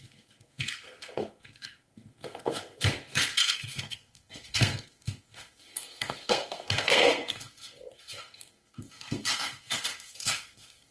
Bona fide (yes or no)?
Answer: no